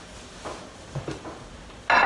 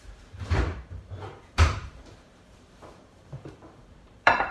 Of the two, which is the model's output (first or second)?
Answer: second